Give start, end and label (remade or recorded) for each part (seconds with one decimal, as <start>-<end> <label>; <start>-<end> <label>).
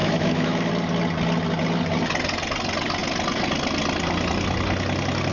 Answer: 0.0-0.7 remade; 0.7-5.3 recorded